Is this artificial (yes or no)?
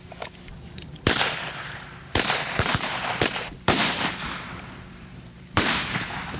yes